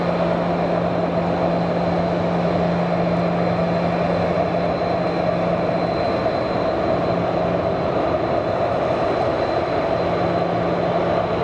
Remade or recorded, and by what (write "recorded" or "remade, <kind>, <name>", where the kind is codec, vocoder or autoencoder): recorded